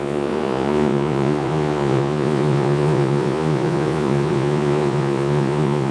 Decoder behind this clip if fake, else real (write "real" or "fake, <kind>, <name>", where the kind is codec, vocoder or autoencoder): fake, vocoder, Vocos